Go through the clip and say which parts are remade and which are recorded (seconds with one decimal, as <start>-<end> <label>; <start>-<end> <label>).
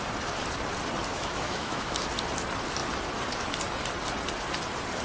0.0-1.1 recorded; 1.1-2.0 remade; 2.0-5.0 recorded